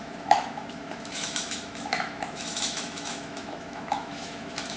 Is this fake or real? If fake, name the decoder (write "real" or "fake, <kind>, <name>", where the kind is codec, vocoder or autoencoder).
fake, autoencoder, DAC-VAE